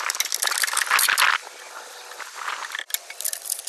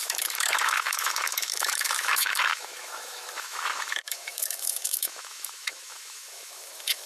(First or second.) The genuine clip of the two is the first